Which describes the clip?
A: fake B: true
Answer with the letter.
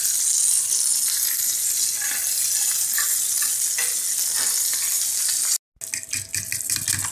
B